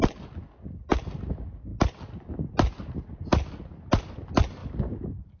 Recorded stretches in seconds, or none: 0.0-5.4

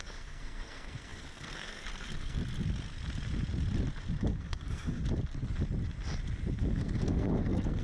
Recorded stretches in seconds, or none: 2.4-4.4; 5.0-6.6

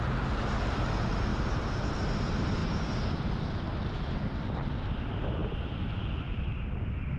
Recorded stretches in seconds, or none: 0.0-7.2